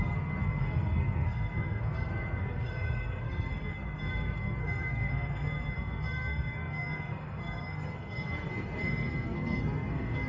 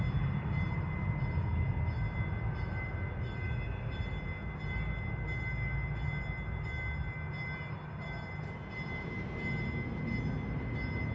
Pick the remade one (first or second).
first